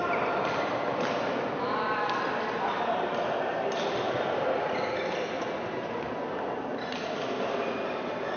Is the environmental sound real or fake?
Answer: real